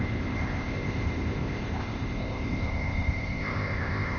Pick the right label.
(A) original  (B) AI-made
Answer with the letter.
B